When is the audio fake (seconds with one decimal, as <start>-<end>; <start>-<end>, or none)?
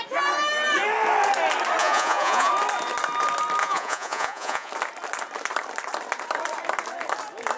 1.8-2.5; 3.6-4.7